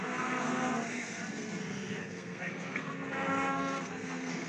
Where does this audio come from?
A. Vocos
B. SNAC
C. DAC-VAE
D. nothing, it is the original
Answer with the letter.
B